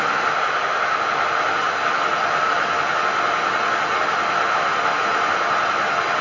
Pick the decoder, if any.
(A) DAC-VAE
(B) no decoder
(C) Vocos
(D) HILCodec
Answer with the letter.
B